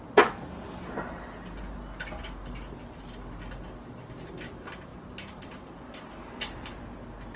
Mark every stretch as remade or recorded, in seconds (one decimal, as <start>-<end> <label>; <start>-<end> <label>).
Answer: 0.0-4.9 recorded; 4.9-6.8 remade; 6.8-7.4 recorded